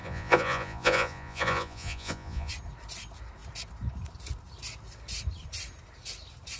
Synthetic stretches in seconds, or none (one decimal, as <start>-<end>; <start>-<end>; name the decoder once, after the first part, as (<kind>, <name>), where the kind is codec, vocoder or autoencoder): 0.0-2.5 (vocoder, Vocos)